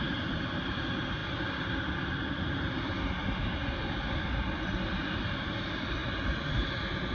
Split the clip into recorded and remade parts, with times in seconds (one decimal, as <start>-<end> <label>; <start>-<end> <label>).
0.0-7.1 recorded